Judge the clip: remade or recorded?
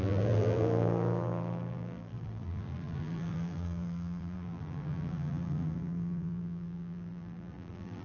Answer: remade